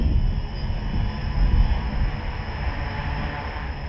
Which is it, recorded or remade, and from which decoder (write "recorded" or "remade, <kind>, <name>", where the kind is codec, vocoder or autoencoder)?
recorded